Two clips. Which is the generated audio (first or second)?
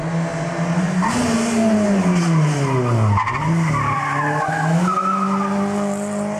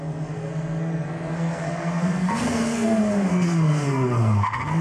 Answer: second